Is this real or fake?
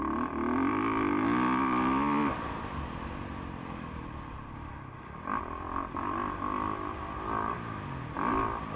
real